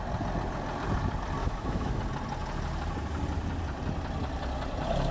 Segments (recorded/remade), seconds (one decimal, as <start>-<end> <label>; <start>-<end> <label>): 0.0-1.4 recorded; 1.4-2.0 remade; 2.0-5.1 recorded